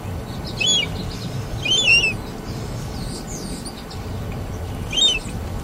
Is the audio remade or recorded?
recorded